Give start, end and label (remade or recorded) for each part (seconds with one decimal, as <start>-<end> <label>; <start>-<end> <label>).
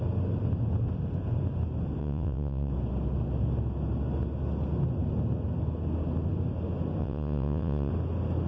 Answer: 0.0-2.0 recorded; 2.0-2.7 remade; 2.7-7.0 recorded; 7.0-7.9 remade; 7.9-8.5 recorded